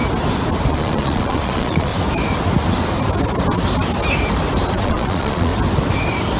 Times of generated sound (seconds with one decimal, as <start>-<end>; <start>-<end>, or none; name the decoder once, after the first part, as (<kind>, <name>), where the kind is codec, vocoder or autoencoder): 0.7-1.9 (vocoder, Vocos); 4.8-5.5